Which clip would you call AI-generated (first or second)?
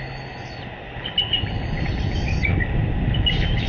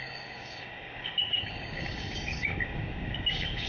second